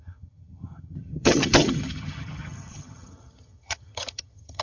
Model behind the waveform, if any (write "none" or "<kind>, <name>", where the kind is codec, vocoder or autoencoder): vocoder, HiFi-GAN